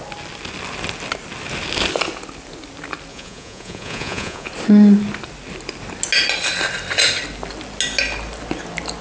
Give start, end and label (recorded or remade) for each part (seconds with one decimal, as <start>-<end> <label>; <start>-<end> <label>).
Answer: 0.0-3.1 recorded; 3.1-4.5 remade; 4.5-9.0 recorded